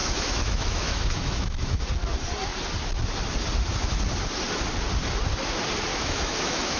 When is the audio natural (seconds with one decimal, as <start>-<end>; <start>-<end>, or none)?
1.8-5.9